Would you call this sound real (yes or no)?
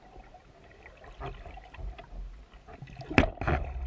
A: yes